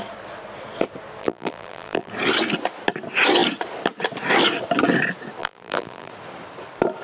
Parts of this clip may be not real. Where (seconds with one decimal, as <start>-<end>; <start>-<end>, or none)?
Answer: 1.2-2.1; 5.4-6.1